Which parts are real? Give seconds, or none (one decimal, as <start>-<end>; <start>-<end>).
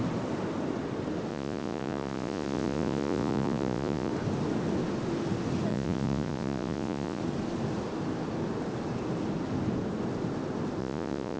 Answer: 0.0-1.3; 4.1-5.7; 7.2-10.8